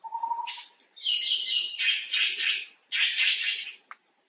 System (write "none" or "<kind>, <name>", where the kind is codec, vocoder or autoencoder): vocoder, BigVGAN v2